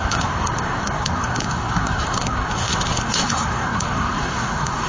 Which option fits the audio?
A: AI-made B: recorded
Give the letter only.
A